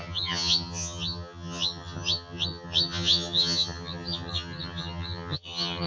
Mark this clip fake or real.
fake